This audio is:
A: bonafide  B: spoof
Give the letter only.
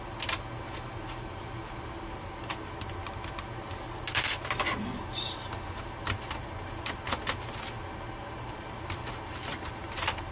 A